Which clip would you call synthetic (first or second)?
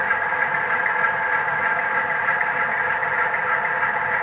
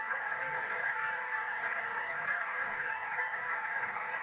second